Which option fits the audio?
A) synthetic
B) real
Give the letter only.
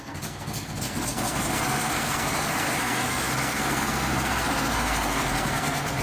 A